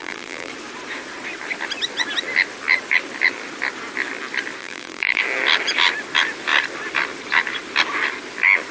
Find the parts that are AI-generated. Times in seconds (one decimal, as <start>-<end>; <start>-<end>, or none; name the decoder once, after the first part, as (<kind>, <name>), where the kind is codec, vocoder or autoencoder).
0.0-0.5 (vocoder, BigVGAN v2); 4.6-5.2